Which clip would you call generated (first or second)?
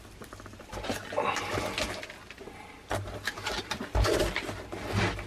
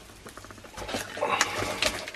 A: first